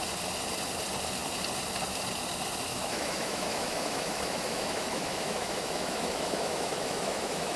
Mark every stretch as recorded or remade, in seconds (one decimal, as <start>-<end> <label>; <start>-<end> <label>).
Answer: 0.0-2.7 recorded; 2.7-7.6 remade